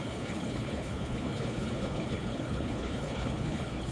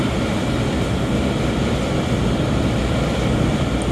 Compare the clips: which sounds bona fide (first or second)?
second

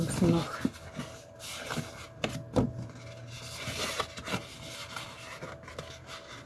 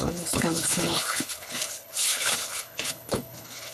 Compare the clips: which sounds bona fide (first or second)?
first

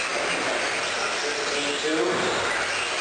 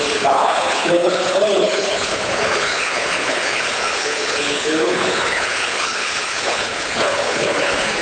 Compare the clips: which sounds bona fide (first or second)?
first